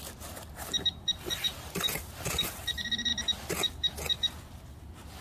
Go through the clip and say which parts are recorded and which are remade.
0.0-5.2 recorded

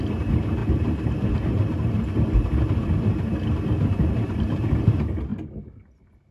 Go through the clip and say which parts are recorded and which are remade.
0.0-6.3 recorded

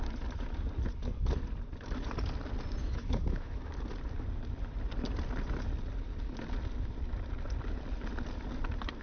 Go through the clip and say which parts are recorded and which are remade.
0.0-2.8 recorded; 2.8-3.8 remade; 3.8-9.0 recorded